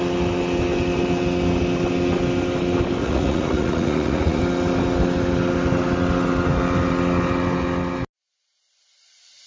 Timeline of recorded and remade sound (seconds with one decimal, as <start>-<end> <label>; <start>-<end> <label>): 0.0-3.0 recorded; 3.0-4.4 remade; 4.4-9.5 recorded